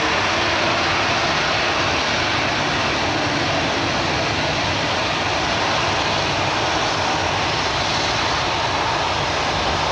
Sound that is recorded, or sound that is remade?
recorded